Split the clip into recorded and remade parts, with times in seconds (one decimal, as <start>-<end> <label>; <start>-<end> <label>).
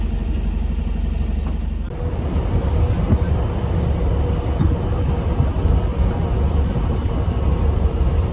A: 0.0-8.3 recorded